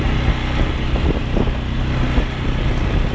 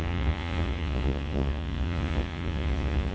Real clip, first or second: first